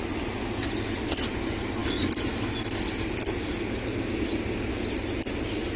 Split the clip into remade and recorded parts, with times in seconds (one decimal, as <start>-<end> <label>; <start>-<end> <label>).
0.0-5.8 recorded